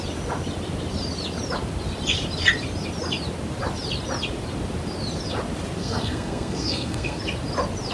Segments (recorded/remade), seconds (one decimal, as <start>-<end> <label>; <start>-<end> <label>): 0.0-5.8 recorded; 5.8-7.2 remade; 7.2-7.9 recorded